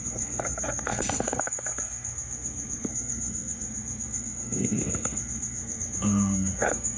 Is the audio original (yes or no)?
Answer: no